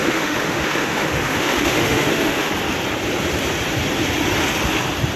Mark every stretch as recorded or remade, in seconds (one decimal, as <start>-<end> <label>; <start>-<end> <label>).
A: 0.0-2.5 remade; 2.5-5.2 recorded